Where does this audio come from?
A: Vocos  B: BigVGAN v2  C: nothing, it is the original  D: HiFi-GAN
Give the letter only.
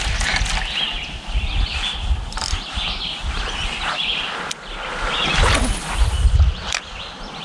C